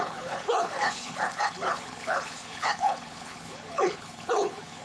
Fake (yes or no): yes